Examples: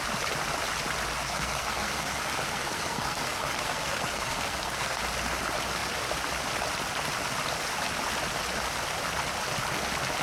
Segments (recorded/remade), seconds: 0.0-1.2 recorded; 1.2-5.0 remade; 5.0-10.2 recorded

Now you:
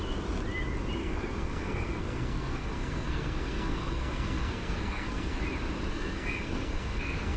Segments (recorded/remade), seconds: 0.0-1.0 recorded; 1.0-5.4 remade; 5.4-5.9 recorded; 5.9-7.4 remade

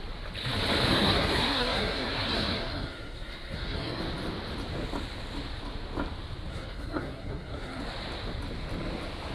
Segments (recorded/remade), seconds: 0.0-0.9 recorded; 0.9-4.0 remade; 4.0-6.5 recorded; 6.5-7.8 remade; 7.8-9.3 recorded

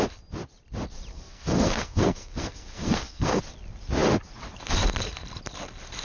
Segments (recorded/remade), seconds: 0.0-1.1 recorded; 1.1-3.4 remade; 3.4-6.0 recorded

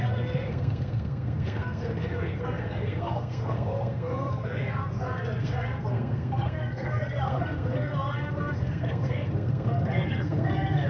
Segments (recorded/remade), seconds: 0.0-10.9 remade